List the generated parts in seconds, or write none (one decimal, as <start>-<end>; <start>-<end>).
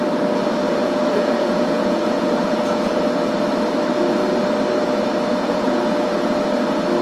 0.8-3.0; 5.3-6.4